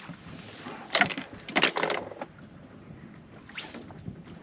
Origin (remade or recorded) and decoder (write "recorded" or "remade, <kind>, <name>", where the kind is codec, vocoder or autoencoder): recorded